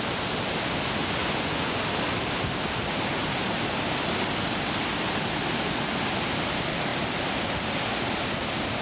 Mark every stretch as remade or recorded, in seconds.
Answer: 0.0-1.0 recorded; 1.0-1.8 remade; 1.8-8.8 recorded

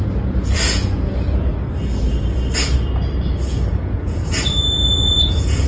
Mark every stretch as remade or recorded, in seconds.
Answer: 0.0-1.5 remade; 1.5-3.8 recorded; 3.8-5.7 remade

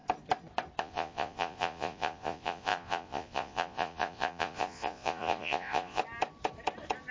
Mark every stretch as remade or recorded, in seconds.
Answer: 0.0-0.8 recorded; 0.8-6.0 remade; 6.0-7.1 recorded

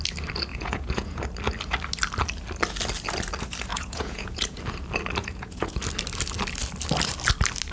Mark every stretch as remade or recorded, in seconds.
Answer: 0.0-0.5 recorded; 0.5-1.2 remade; 1.2-3.7 recorded; 3.7-4.6 remade; 4.6-5.2 recorded; 5.2-5.8 remade; 5.8-7.7 recorded

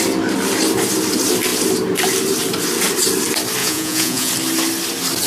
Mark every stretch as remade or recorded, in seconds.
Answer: 0.0-3.6 recorded; 3.6-4.3 remade; 4.3-5.3 recorded

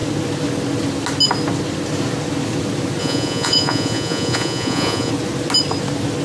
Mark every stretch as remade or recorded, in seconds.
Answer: 0.0-3.0 recorded; 3.0-5.1 remade; 5.1-6.2 recorded